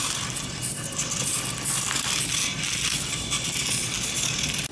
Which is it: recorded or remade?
recorded